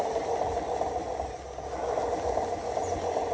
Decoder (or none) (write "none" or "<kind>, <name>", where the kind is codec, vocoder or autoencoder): none